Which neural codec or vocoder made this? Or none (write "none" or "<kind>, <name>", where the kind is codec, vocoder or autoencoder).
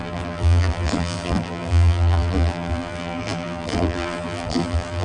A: vocoder, BigVGAN v2